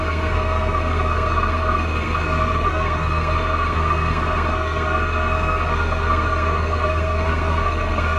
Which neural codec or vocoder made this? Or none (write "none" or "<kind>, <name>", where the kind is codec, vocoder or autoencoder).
codec, SNAC